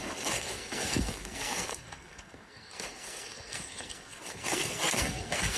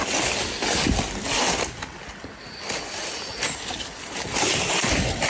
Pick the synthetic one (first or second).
first